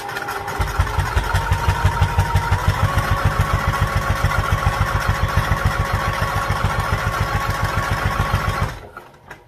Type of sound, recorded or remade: recorded